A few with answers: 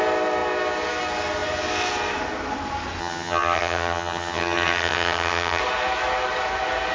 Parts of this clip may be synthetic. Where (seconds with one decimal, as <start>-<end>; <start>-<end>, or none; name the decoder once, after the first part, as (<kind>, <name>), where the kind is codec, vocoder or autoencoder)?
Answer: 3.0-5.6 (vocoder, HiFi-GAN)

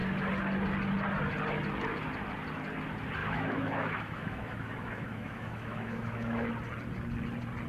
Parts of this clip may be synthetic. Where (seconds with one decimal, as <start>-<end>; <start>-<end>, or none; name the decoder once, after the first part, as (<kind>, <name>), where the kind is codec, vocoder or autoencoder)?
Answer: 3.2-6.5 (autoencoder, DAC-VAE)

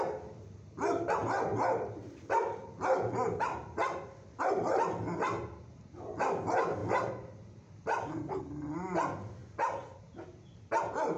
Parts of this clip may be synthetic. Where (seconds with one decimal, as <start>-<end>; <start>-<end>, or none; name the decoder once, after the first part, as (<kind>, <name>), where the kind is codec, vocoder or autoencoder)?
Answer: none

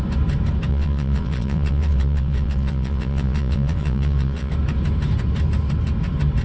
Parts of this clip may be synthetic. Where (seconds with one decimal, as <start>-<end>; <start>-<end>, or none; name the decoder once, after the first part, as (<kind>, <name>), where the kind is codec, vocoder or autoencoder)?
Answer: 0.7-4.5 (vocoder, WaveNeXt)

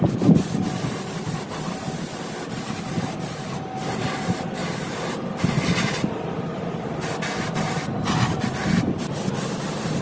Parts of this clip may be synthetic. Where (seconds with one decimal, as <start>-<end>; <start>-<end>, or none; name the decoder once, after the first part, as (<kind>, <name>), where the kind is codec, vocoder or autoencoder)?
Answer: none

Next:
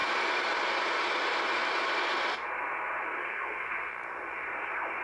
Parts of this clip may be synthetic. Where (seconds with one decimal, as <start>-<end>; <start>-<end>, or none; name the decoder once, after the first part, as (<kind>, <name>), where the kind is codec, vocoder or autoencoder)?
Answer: 3.2-3.9 (codec, SNAC)